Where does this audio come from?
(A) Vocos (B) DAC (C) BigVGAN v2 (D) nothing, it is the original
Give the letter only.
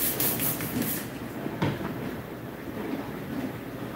C